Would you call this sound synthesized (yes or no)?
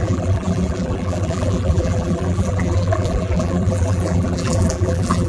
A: yes